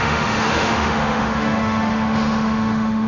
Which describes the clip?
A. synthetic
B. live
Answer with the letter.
A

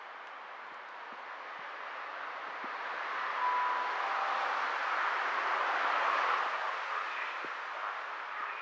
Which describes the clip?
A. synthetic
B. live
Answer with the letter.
B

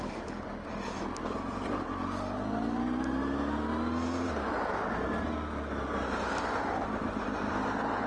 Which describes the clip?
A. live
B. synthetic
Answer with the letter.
A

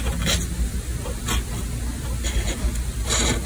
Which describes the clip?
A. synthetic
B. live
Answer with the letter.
B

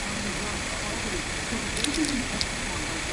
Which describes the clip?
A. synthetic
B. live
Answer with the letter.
B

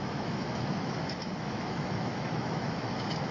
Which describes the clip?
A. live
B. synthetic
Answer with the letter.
B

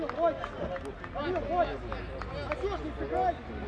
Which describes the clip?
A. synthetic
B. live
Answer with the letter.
B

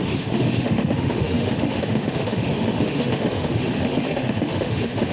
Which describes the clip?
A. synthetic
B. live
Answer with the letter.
A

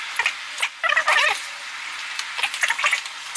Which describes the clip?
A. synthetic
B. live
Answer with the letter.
B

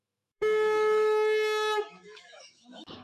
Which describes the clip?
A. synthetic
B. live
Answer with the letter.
A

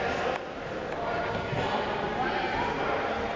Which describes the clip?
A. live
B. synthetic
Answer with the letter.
A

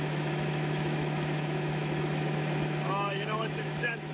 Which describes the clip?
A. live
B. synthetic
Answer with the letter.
B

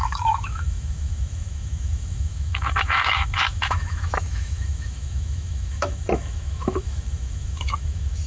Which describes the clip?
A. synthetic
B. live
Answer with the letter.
A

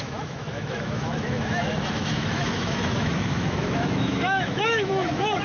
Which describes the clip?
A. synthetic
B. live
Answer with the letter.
A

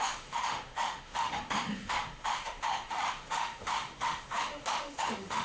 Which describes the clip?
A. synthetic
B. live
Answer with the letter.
A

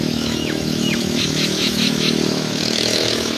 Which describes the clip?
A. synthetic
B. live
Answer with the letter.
A